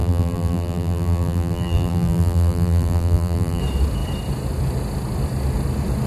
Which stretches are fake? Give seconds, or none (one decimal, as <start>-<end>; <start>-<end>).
0.0-3.6